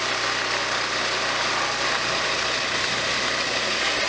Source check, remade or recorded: recorded